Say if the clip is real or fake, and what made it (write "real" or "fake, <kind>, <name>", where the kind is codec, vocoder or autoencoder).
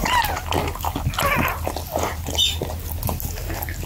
real